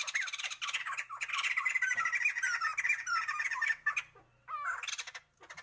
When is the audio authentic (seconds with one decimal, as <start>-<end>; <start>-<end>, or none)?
0.0-5.6